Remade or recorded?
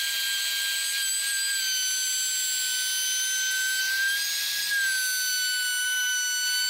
recorded